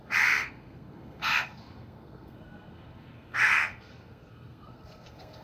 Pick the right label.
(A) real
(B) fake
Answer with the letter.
B